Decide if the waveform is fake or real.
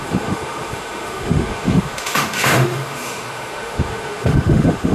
fake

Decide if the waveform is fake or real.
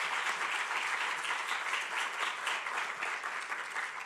real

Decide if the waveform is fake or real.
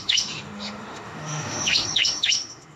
fake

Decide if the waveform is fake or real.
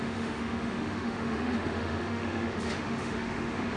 fake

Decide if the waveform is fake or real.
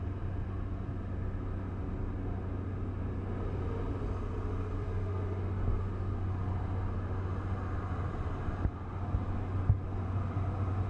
real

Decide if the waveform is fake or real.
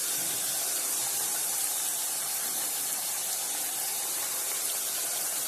real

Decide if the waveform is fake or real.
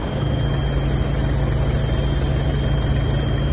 real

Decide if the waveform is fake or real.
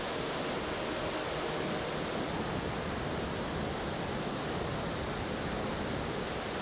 real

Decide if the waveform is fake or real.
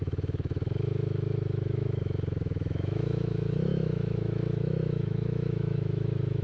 fake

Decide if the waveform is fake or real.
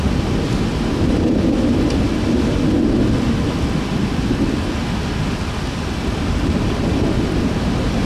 real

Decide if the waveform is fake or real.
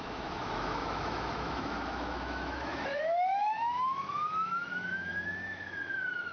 fake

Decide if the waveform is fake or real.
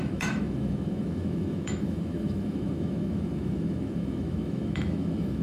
fake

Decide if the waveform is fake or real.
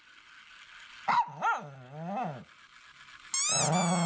real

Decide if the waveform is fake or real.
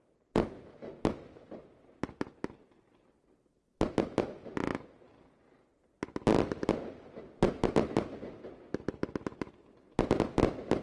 real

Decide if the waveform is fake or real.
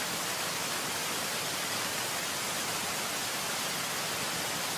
real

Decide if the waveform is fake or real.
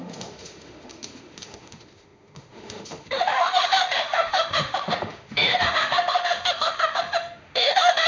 fake